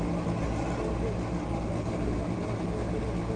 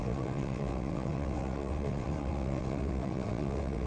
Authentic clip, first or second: first